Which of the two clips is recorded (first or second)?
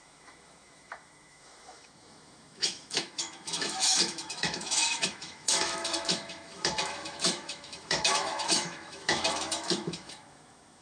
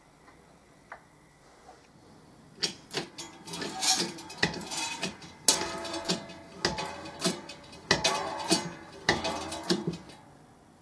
second